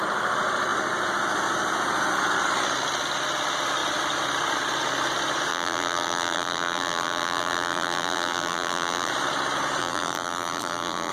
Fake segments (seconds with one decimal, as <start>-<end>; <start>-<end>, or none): 5.5-9.1; 9.8-11.1